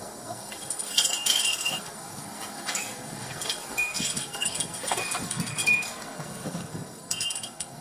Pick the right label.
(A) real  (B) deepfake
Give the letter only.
B